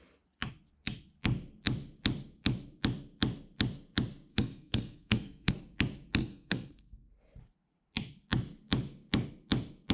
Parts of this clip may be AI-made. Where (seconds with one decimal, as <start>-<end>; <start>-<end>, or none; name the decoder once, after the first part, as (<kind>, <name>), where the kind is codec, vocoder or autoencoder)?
4.3-5.5 (codec, SNAC); 6.2-7.1